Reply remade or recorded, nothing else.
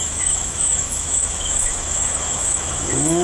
remade